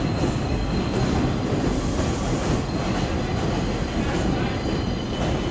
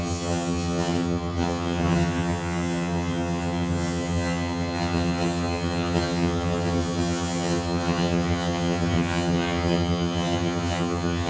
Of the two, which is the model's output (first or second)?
second